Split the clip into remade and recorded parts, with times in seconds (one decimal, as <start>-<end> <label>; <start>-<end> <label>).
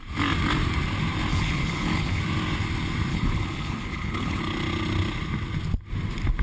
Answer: 0.0-1.3 recorded; 1.3-2.2 remade; 2.2-3.1 recorded; 3.1-4.4 remade; 4.4-6.4 recorded